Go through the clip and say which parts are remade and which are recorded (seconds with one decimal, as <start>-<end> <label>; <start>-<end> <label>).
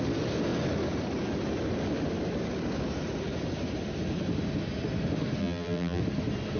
0.0-5.4 recorded; 5.4-6.0 remade; 6.0-6.6 recorded